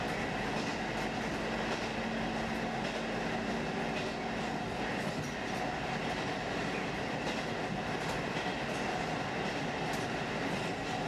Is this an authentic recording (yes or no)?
yes